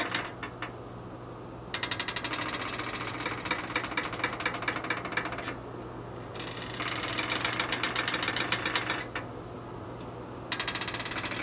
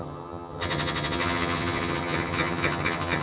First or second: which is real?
first